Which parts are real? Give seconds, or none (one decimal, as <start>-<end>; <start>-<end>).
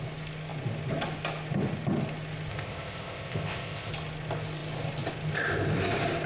0.0-2.5; 3.9-6.3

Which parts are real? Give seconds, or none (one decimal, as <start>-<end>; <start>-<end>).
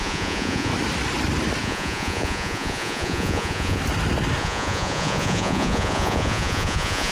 0.7-1.6; 3.8-4.4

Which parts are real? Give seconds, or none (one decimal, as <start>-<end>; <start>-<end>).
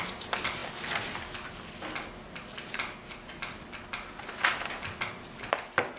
0.0-6.0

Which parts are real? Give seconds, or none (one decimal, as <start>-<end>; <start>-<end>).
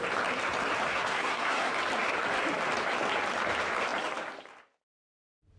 0.0-0.9; 1.7-5.6